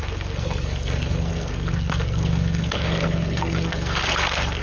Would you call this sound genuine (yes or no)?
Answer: no